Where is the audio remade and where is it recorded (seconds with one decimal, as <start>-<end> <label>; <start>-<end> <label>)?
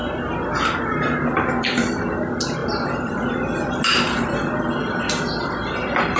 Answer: 0.0-6.2 recorded